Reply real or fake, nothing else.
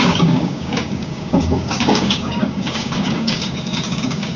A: fake